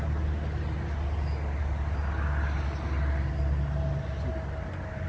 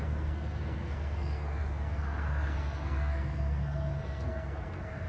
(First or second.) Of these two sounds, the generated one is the second